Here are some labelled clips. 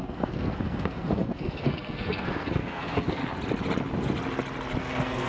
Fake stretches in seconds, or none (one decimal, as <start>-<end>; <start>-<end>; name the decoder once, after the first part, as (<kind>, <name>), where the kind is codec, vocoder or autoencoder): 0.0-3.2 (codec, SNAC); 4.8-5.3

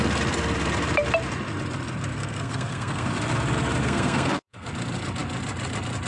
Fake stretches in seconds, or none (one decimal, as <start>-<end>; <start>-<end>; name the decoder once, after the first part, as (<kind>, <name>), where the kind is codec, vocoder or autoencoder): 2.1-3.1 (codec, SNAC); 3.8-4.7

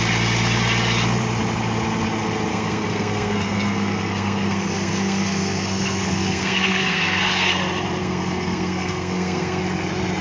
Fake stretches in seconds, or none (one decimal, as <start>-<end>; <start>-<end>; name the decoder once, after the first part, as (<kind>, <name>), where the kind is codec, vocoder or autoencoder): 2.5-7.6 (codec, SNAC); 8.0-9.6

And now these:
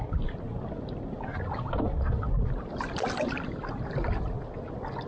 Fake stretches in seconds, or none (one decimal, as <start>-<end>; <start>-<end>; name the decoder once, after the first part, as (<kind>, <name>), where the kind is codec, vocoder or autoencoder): none

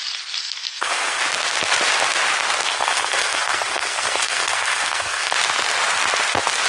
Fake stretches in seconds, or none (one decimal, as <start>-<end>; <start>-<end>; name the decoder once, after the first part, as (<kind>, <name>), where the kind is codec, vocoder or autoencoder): 0.4-1.2 (codec, SNAC); 2.7-5.3

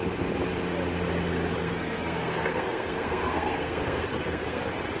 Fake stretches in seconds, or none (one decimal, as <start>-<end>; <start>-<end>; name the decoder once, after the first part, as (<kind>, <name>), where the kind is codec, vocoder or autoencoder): 1.6-4.6 (codec, SNAC)